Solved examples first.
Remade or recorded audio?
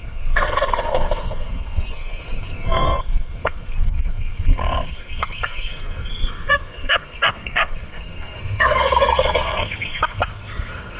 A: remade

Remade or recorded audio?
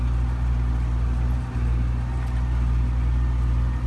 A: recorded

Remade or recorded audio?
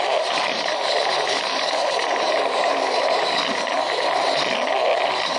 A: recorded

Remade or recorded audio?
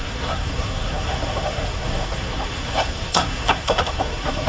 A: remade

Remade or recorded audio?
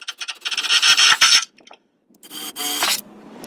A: recorded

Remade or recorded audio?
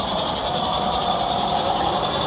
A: recorded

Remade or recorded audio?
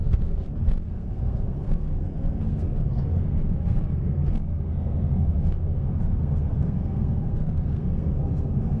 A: remade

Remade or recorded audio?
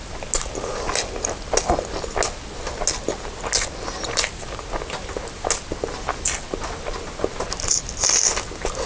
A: recorded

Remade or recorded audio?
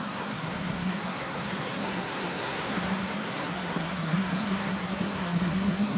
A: remade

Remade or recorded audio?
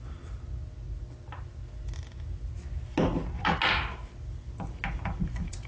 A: recorded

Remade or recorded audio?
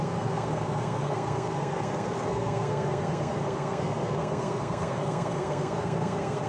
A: remade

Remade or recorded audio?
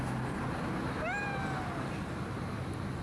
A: recorded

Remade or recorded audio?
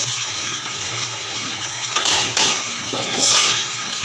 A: remade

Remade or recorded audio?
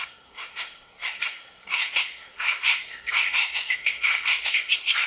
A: remade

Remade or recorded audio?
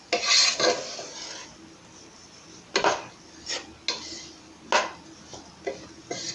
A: recorded